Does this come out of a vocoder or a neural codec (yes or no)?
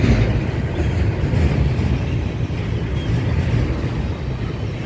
no